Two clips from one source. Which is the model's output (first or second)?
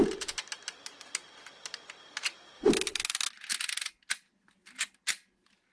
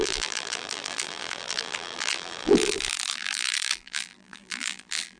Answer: second